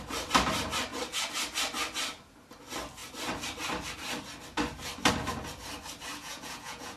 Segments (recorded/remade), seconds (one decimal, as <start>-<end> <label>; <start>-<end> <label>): 0.0-6.1 recorded; 6.1-7.0 remade